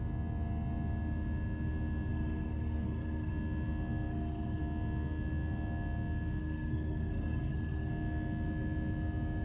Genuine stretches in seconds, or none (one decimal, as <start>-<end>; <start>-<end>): 0.0-2.1; 3.3-4.1; 4.6-6.4; 7.9-9.4